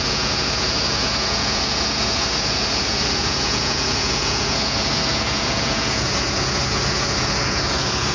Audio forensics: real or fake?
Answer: fake